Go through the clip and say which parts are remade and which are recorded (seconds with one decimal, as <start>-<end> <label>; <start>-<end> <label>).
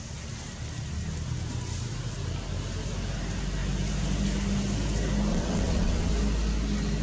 0.0-5.3 recorded; 5.3-6.1 remade; 6.1-7.0 recorded